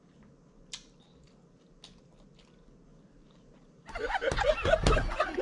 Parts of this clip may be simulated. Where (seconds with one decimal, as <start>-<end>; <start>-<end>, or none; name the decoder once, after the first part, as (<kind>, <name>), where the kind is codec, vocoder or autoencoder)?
2.9-4.1 (vocoder, BigVGAN v2)